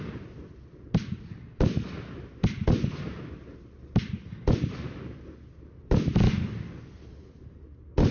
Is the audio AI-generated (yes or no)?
no